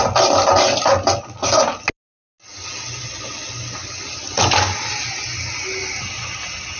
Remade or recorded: recorded